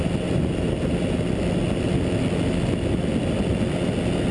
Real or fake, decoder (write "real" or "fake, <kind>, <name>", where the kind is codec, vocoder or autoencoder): real